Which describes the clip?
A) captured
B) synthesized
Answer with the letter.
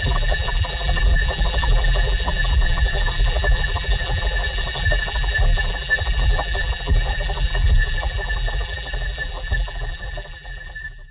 B